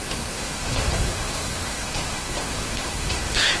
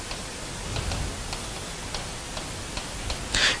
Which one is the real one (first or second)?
second